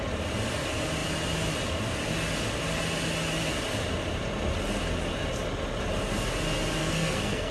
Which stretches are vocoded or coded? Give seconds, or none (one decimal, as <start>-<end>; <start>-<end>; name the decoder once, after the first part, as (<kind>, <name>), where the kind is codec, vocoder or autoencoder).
6.8-7.5 (codec, SNAC)